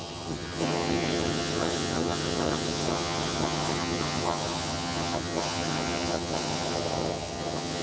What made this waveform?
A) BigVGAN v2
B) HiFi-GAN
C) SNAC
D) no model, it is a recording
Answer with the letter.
B